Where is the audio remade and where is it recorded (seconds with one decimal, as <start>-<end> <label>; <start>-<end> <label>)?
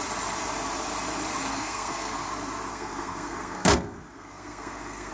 0.0-1.5 recorded; 1.5-2.3 remade; 2.3-2.7 recorded; 2.7-5.1 remade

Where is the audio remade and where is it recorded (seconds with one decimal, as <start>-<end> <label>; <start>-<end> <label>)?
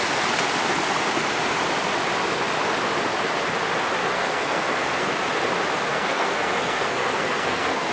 0.0-4.0 recorded; 4.0-5.1 remade; 5.1-5.9 recorded; 5.9-7.9 remade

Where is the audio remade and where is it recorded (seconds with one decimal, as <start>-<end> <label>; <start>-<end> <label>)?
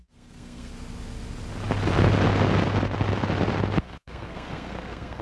0.0-0.7 remade; 0.7-3.8 recorded; 3.8-5.2 remade